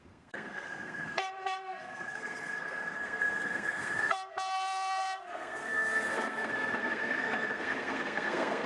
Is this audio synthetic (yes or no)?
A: yes